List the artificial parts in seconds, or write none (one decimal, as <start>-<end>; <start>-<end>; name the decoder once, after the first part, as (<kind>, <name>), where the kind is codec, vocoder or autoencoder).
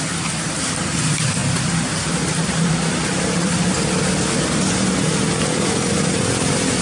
0.0-1.4 (vocoder, BigVGAN v2); 2.1-6.8